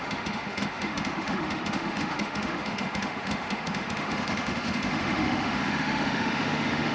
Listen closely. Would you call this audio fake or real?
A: fake